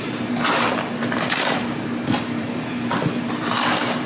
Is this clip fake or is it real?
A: fake